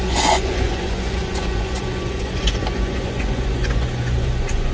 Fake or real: fake